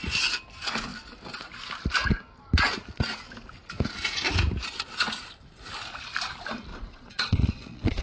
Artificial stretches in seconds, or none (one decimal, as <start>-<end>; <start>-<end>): 6.7-8.0